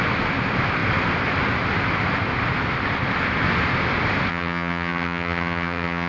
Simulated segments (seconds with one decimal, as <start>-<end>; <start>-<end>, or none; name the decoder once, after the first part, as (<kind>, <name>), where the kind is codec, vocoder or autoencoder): 4.3-6.1 (vocoder, HiFi-GAN)